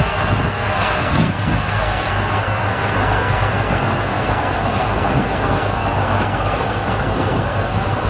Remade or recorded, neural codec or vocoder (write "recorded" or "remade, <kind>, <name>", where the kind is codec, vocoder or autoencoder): remade, codec, SNAC